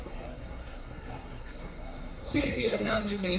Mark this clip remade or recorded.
remade